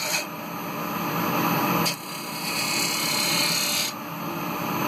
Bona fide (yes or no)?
yes